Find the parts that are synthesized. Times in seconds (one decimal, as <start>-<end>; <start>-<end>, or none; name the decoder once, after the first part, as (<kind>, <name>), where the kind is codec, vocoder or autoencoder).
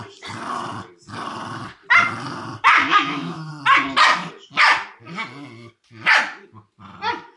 2.8-3.5 (autoencoder, DAC-VAE)